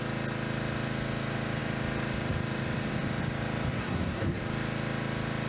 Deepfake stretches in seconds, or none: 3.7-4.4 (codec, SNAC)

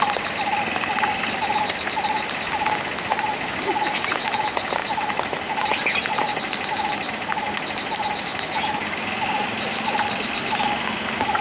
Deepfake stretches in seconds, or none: none

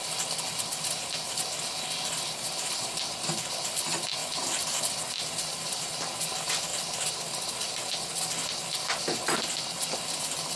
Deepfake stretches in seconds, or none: none

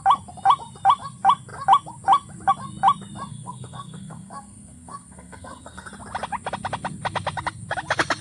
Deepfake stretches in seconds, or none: 3.3-5.9 (codec, SNAC)

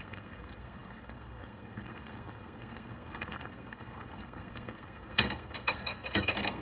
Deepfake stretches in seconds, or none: 0.0-6.6 (codec, SNAC)

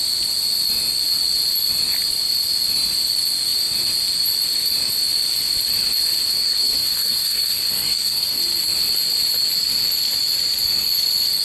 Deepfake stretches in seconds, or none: 6.3-8.4 (codec, SNAC)

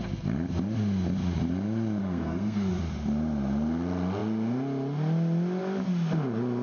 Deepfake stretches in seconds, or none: 2.0-2.7 (codec, SNAC)